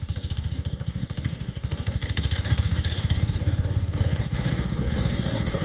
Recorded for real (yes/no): no